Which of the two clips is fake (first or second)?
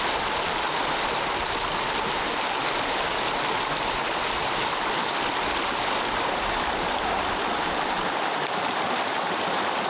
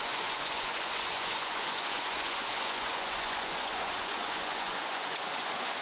second